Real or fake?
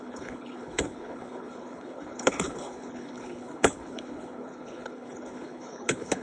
fake